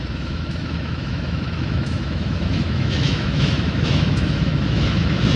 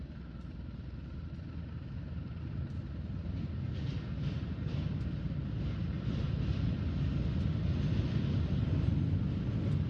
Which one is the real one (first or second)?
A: second